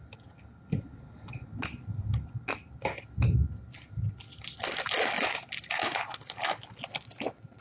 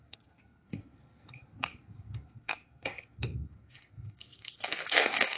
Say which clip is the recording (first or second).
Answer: first